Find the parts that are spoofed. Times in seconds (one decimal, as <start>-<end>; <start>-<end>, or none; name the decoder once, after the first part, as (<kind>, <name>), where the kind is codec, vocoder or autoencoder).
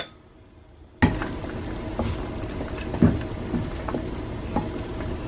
none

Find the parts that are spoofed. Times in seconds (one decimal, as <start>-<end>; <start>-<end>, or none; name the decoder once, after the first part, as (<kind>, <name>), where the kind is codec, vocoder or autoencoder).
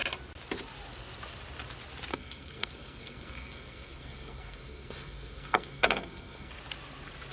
2.1-6.5 (codec, SNAC)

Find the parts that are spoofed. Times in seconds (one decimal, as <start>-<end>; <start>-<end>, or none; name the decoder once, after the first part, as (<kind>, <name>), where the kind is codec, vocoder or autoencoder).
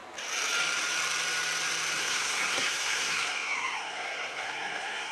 2.0-5.1 (codec, SNAC)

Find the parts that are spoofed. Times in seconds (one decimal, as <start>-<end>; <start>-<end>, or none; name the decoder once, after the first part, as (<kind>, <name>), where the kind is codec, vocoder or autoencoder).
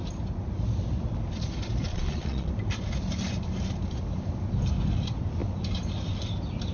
1.9-2.5 (vocoder, Vocos)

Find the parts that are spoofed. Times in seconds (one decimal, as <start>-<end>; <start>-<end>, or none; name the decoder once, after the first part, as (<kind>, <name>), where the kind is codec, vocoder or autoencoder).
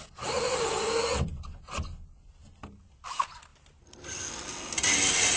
none